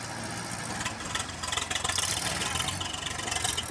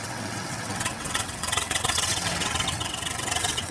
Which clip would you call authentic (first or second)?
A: first